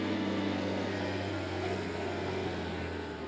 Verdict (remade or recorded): remade